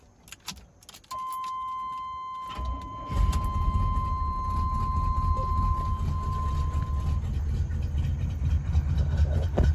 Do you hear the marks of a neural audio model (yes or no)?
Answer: no